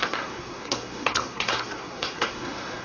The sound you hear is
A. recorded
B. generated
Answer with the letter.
B